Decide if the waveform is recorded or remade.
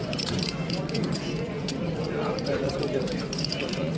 remade